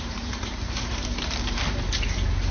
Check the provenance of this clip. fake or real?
fake